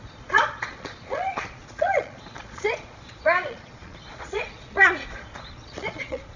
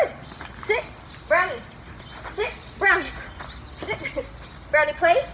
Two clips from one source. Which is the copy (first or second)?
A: first